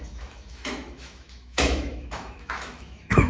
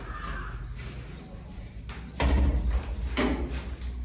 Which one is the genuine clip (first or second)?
second